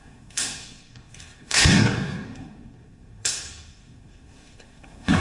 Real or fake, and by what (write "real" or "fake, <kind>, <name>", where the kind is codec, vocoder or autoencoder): fake, codec, SNAC